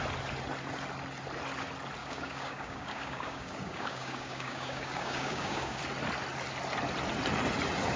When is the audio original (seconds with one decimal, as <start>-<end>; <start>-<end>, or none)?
0.0-2.0; 5.8-8.0